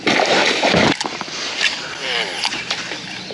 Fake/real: real